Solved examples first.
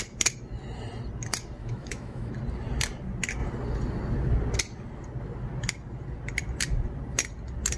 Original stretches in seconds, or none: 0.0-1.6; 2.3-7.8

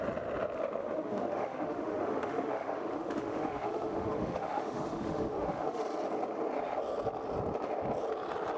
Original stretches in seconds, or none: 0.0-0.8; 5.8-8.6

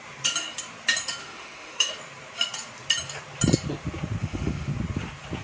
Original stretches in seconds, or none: 0.0-1.2; 1.9-4.2; 4.7-5.4